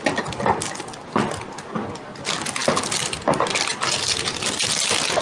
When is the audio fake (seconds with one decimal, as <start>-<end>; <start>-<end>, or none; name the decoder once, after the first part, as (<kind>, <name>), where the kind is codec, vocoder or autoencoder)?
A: none